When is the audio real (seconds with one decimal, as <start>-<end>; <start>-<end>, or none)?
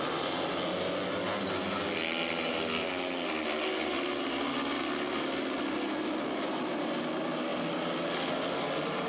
0.0-9.1